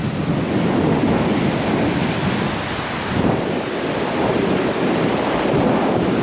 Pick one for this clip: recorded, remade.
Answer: recorded